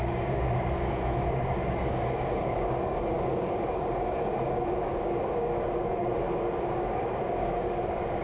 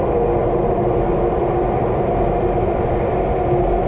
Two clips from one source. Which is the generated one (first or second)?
first